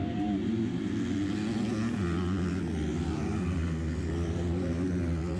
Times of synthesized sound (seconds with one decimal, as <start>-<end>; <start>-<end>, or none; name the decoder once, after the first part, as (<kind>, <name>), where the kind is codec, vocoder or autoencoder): none